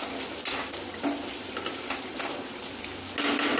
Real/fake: real